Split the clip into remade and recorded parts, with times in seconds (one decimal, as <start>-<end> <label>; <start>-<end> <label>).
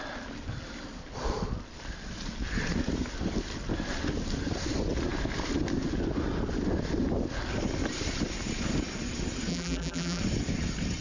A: 0.0-9.5 recorded; 9.5-10.2 remade; 10.2-11.0 recorded